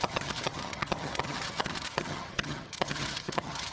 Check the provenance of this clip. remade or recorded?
remade